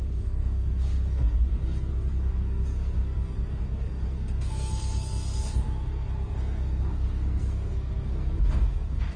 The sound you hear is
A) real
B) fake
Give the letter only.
B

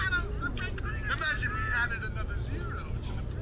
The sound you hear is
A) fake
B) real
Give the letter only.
B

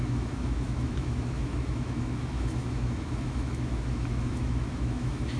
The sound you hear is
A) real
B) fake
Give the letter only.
B